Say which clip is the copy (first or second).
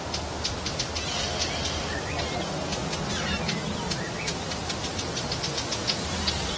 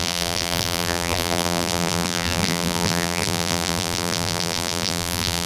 second